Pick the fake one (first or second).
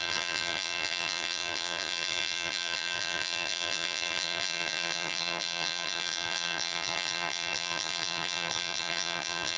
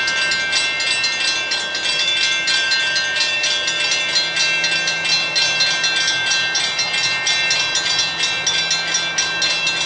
first